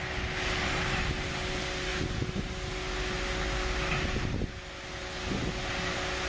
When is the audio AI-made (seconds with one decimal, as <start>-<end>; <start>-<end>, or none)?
none